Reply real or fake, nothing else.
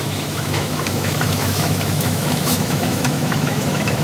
fake